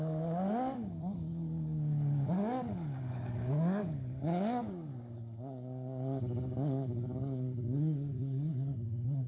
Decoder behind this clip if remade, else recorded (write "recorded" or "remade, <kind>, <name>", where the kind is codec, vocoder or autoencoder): remade, codec, DAC